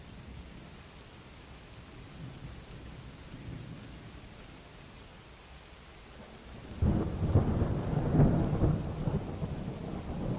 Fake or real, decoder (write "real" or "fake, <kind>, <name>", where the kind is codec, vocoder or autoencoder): real